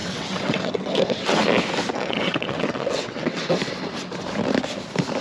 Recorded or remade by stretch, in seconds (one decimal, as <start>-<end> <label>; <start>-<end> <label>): 0.0-1.4 remade; 1.4-1.9 recorded; 1.9-3.5 remade; 3.5-5.2 recorded